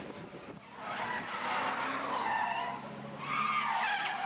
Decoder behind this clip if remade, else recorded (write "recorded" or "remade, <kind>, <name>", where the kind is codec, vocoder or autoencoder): recorded